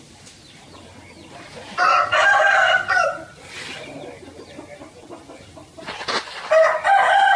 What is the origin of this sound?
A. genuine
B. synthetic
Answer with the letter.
A